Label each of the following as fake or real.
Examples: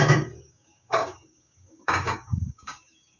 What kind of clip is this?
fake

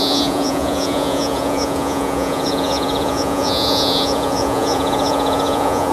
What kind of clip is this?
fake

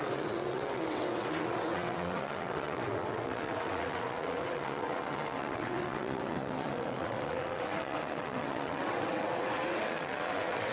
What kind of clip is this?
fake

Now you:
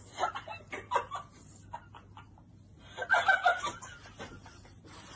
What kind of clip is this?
real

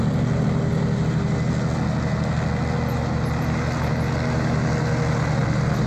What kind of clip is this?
real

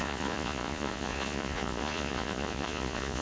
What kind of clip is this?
fake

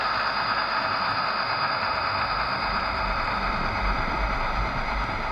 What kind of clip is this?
real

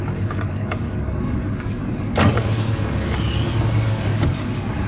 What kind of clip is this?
fake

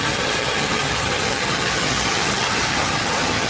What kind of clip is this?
fake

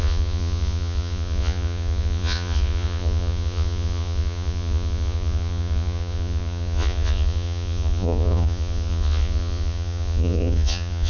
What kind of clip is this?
fake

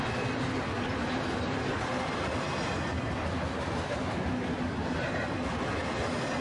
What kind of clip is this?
real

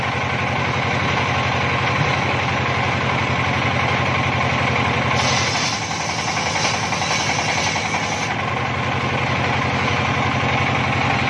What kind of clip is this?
real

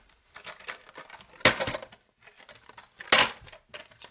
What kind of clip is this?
real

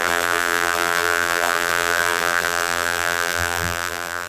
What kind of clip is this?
fake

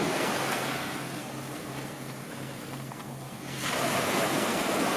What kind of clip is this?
fake